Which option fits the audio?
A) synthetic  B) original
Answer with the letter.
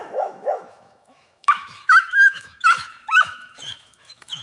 A